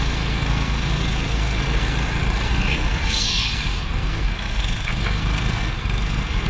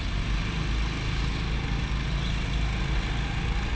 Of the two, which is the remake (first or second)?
first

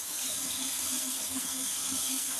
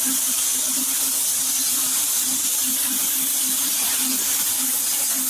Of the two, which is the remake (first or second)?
first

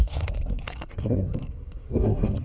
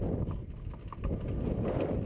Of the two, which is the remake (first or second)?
first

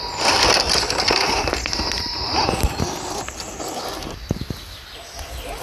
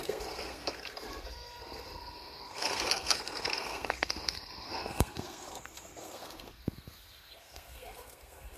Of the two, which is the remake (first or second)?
second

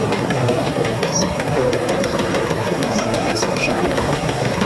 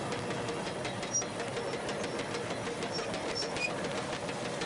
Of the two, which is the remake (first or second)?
first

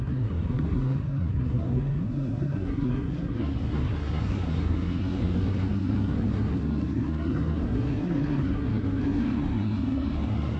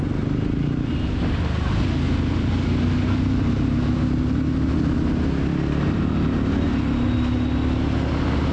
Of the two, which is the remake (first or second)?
first